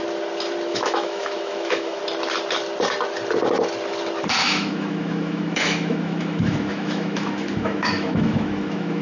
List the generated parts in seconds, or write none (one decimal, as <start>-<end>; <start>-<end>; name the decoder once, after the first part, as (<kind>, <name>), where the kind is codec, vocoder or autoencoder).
0.7-2.0 (autoencoder, DAC-VAE); 4.4-9.0